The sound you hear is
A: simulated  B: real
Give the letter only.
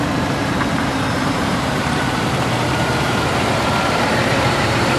A